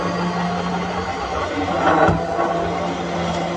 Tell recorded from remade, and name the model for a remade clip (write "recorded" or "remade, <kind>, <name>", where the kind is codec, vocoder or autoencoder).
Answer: recorded